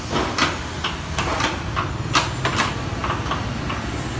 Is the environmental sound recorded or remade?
recorded